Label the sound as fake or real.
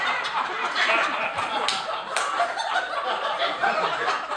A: real